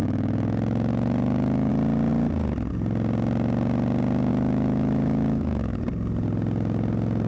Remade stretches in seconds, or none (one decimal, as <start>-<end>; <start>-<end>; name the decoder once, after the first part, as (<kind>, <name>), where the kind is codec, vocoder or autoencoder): 0.0-1.7 (autoencoder, DAC-VAE); 4.3-5.8